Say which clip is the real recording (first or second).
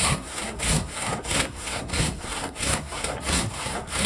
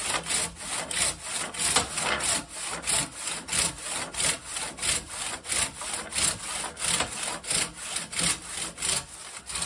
second